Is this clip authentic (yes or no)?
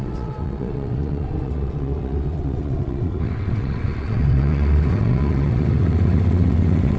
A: no